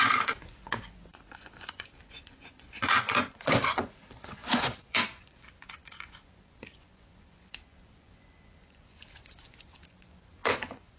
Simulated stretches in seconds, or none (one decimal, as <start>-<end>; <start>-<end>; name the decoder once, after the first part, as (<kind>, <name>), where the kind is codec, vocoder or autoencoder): 0.0-11.0 (vocoder, Vocos)